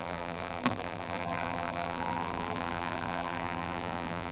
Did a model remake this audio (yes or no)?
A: yes